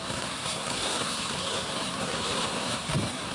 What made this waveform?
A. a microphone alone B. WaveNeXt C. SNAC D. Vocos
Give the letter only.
C